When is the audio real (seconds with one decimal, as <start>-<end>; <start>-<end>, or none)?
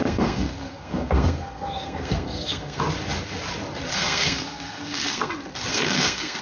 2.8-3.9; 5.3-5.7